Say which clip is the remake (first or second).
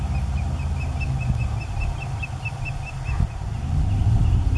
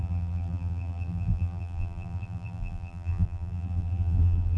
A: second